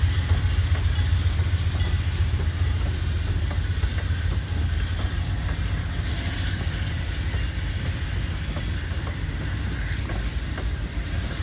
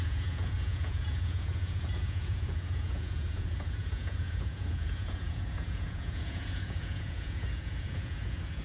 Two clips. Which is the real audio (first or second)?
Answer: first